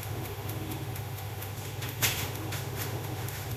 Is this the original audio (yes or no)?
no